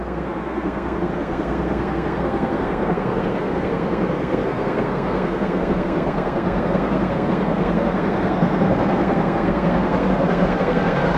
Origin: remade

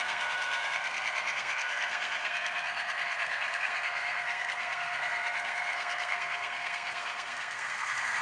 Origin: remade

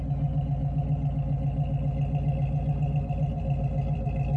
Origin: recorded